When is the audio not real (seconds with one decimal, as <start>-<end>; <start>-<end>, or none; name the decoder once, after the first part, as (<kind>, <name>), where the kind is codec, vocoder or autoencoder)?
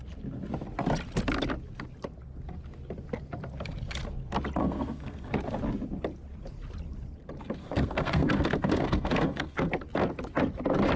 4.6-5.3 (codec, SNAC); 7.6-9.7